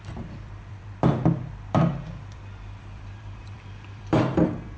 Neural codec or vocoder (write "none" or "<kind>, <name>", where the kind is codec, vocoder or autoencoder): vocoder, BigVGAN v2